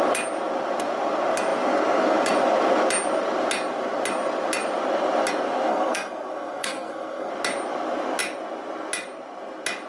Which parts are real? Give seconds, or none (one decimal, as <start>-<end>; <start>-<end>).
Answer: 0.0-5.7; 7.3-9.9